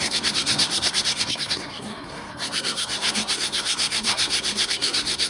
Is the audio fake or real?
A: fake